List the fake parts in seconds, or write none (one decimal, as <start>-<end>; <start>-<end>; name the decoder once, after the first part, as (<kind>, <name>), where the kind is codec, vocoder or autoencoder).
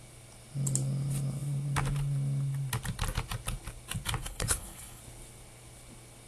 4.2-5.0 (codec, HILCodec)